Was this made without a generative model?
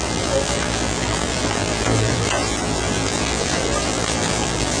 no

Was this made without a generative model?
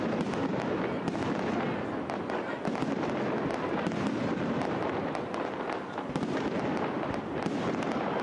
yes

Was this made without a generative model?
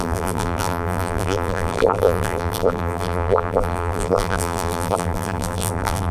no